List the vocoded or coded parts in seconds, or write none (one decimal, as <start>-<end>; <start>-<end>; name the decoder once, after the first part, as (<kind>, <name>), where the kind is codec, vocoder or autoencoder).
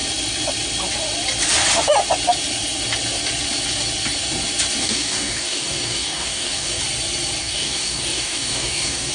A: 4.8-6.8 (codec, DAC); 7.4-9.1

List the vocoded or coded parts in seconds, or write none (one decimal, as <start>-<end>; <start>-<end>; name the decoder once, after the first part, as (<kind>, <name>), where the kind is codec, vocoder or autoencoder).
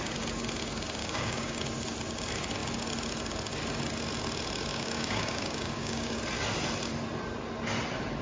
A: 1.0-1.6 (codec, DAC); 4.7-6.2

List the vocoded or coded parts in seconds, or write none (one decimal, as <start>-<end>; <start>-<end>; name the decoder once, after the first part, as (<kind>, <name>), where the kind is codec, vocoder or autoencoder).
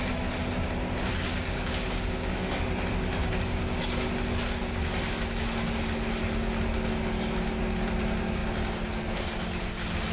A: 1.3-2.5 (codec, DAC); 3.2-4.1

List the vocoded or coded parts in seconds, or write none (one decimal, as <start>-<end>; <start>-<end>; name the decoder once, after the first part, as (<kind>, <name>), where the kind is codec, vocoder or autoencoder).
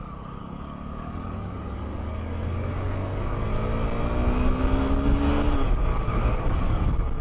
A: 0.4-3.5 (codec, DAC); 5.9-7.2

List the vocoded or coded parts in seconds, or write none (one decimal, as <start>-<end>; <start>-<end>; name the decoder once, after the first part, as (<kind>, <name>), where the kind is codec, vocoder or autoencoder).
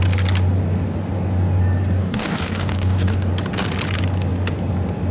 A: 2.0-3.3 (codec, DAC)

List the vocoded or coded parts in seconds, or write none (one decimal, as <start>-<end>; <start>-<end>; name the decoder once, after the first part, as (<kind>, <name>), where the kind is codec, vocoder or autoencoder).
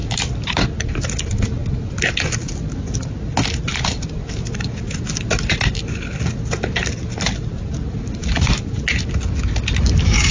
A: none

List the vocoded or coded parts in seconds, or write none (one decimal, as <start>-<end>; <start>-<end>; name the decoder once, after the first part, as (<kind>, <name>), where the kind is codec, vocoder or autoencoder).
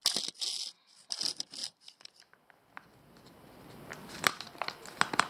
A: none